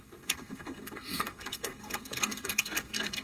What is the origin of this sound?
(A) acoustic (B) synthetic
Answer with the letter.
B